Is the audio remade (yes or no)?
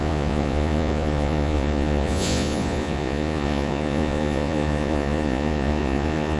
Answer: yes